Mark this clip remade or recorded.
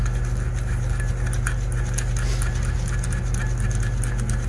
recorded